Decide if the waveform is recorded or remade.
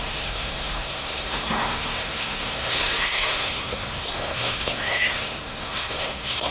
remade